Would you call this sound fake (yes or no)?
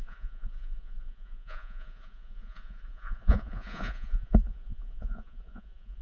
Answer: yes